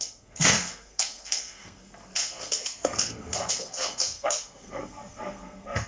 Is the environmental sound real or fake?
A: fake